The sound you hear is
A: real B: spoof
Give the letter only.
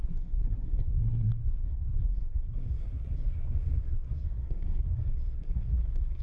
B